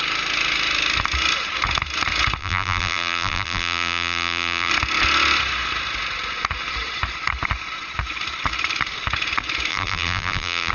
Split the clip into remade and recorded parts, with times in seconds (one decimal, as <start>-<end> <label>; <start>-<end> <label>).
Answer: 0.0-2.4 recorded; 2.4-4.7 remade; 4.7-9.7 recorded; 9.7-10.7 remade